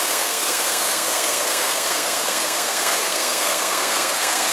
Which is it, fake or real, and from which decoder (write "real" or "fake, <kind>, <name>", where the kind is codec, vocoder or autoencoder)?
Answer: fake, codec, SNAC